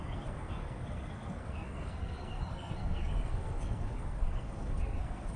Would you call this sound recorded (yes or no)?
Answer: no